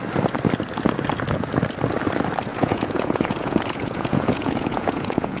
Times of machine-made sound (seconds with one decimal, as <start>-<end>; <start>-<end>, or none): 2.5-5.4